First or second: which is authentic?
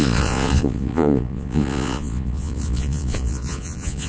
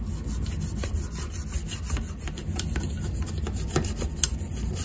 second